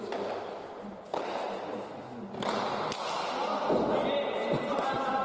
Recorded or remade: recorded